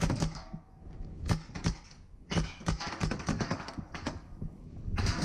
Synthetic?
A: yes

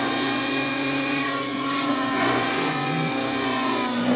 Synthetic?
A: yes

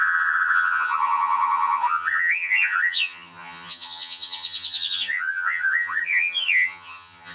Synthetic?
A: yes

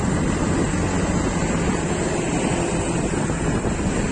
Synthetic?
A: no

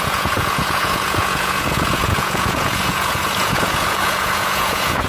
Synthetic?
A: yes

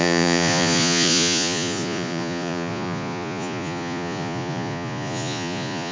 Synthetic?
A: yes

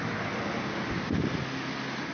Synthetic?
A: no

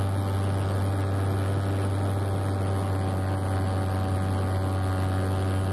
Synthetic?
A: no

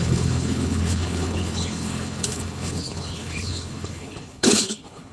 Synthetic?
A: yes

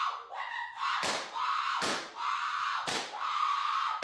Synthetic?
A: no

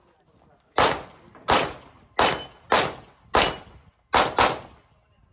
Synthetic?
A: no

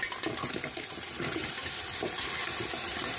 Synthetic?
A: no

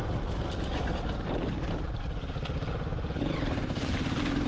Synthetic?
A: no